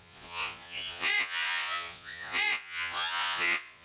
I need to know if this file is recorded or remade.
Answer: remade